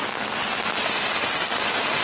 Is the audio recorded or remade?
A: recorded